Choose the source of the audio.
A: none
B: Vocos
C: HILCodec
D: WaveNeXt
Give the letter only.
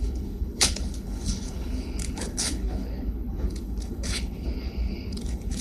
C